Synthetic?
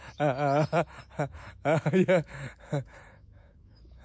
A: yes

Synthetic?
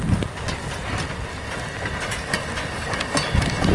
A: no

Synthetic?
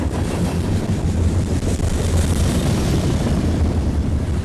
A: yes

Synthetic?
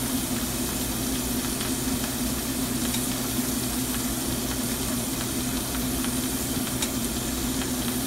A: no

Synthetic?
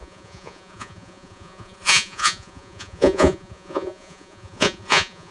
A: yes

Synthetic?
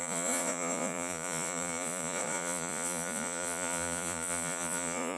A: yes